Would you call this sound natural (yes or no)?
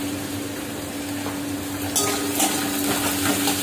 yes